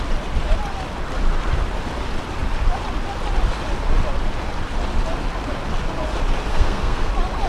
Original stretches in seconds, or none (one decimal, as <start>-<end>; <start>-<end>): 0.0-6.5; 7.1-7.5